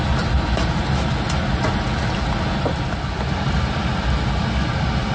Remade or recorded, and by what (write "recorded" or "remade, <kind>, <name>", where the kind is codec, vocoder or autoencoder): recorded